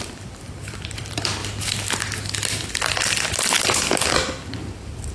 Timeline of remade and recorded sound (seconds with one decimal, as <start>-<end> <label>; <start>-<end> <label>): 0.0-1.4 remade; 1.4-4.5 recorded; 4.5-5.1 remade